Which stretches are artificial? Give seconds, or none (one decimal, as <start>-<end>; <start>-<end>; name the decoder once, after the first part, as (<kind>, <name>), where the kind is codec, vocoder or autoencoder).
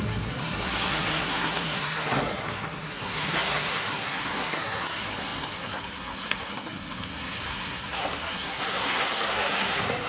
0.0-10.1 (codec, SNAC)